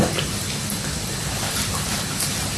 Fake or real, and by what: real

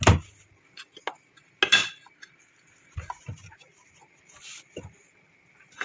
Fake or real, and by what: real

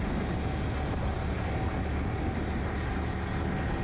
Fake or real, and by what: real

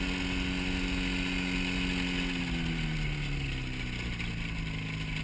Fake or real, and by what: real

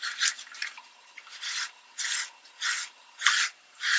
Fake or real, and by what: real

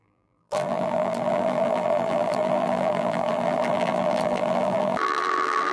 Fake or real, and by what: fake, vocoder, BigVGAN v2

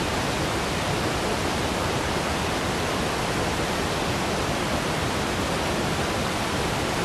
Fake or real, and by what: real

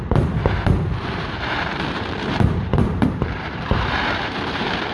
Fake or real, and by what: fake, vocoder, BigVGAN v2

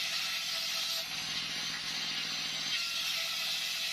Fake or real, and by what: real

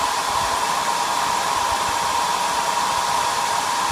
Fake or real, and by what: fake, vocoder, BigVGAN v2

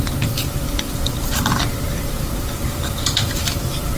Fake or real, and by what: fake, vocoder, BigVGAN v2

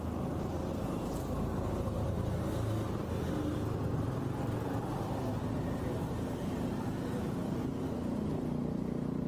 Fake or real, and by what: real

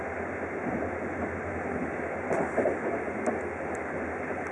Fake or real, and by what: real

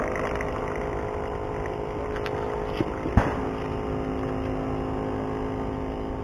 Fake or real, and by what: real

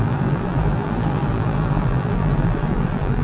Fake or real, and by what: fake, vocoder, BigVGAN v2